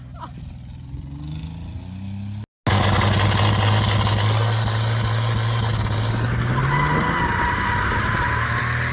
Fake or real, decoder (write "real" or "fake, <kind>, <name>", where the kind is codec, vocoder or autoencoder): real